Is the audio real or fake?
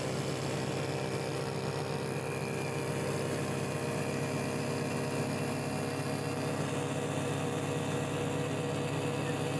real